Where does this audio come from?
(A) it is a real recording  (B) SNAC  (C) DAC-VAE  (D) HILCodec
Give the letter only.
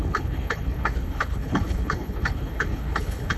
D